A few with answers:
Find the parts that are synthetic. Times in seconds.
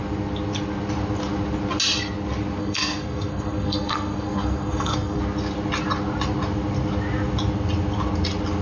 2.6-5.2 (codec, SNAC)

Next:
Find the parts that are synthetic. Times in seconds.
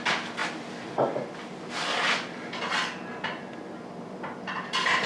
none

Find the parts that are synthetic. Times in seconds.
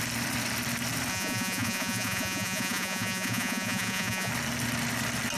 1.1-4.3 (vocoder, Vocos)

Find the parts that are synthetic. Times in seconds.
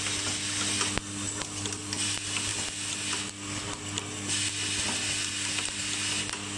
none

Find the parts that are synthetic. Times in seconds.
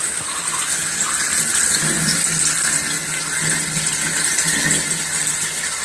none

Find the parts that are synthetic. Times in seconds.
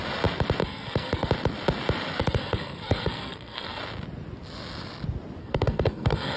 0.6-1.3 (codec, SNAC); 2.2-3.8; 5.4-6.4